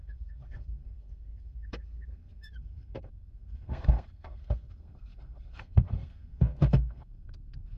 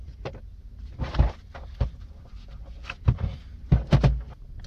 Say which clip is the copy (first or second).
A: first